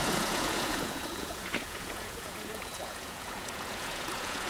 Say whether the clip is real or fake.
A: fake